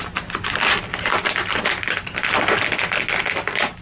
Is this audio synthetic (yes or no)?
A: no